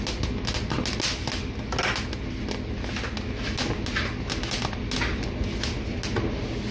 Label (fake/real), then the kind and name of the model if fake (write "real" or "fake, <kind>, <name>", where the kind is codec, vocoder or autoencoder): real